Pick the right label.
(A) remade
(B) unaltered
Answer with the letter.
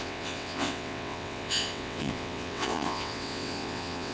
A